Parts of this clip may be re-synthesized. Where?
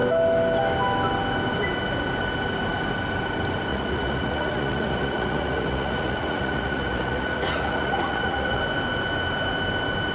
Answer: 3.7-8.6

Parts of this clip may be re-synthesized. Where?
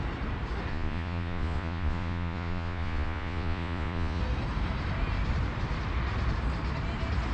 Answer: 0.7-4.2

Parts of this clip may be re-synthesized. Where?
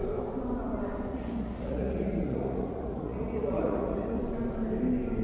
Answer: 1.1-4.2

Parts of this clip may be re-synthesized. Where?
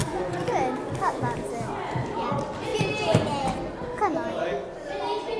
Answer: none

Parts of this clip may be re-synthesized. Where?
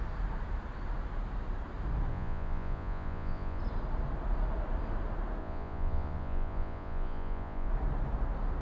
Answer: 2.1-3.6; 5.4-7.7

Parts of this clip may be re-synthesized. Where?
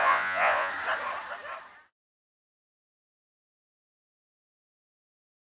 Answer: 0.0-0.7